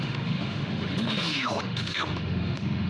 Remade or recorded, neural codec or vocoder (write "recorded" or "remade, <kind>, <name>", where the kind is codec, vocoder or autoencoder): remade, autoencoder, DAC-VAE